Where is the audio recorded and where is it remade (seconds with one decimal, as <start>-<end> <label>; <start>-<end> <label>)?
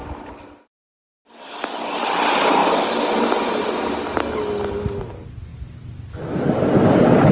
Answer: 0.0-7.3 recorded